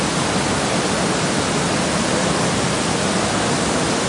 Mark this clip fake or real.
real